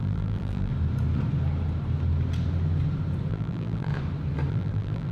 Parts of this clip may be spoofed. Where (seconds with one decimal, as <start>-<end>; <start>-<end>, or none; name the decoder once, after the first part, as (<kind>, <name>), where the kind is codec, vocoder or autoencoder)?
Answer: 0.0-0.7 (vocoder, BigVGAN v2); 3.3-3.9; 4.5-5.1